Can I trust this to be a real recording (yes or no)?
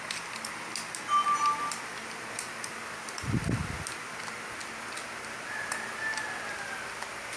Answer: yes